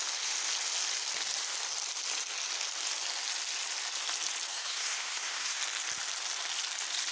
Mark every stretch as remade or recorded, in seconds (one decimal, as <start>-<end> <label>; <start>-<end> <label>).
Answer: 0.0-4.5 recorded; 4.5-5.6 remade; 5.6-7.1 recorded